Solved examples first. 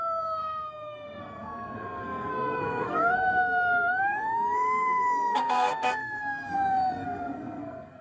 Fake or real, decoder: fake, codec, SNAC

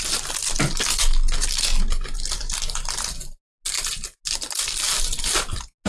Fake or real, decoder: real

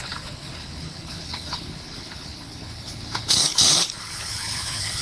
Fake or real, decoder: fake, codec, HILCodec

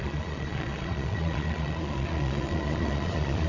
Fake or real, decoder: fake, vocoder, Vocos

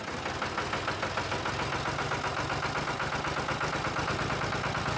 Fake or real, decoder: real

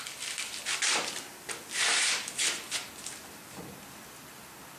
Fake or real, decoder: real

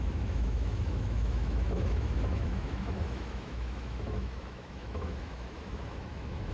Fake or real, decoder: fake, autoencoder, DAC-VAE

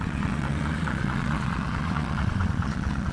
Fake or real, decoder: fake, vocoder, Vocos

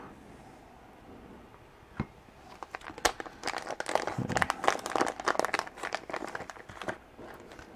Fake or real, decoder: real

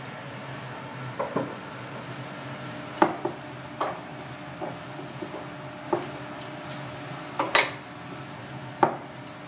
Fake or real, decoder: real